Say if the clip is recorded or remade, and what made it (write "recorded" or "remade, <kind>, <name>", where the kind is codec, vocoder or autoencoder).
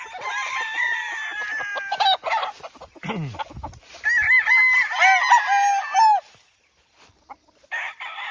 recorded